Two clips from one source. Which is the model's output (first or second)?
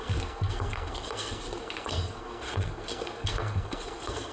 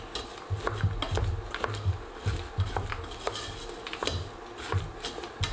first